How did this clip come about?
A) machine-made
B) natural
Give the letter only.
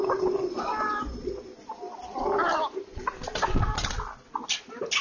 B